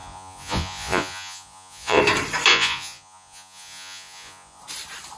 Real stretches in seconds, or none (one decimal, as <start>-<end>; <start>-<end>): 2.0-2.5; 4.6-5.2